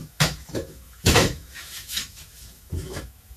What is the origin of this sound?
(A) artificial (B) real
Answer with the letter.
A